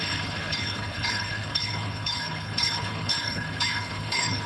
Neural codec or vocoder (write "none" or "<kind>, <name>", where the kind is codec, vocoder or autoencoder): codec, HILCodec